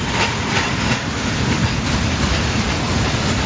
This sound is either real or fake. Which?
real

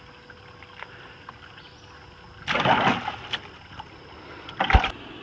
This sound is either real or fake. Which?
real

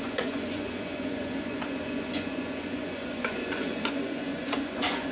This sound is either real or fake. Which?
fake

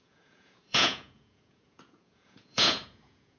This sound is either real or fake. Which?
fake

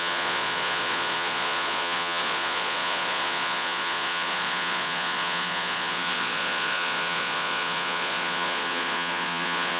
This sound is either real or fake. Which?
fake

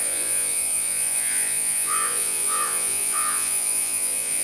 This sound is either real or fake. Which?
fake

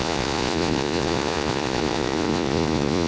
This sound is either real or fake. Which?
fake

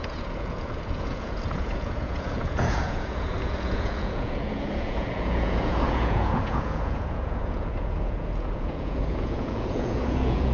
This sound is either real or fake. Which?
fake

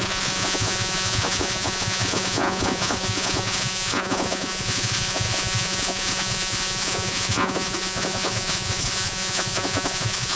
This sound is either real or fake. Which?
fake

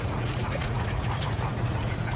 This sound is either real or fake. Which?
fake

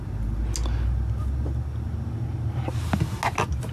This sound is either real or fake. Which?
real